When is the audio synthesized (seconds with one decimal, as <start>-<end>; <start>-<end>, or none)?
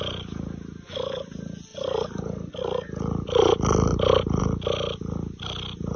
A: none